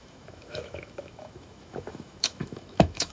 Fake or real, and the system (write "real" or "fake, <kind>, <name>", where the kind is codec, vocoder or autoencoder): fake, autoencoder, DAC-VAE